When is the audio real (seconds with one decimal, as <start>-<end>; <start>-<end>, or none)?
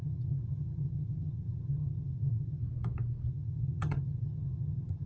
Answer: 2.6-3.3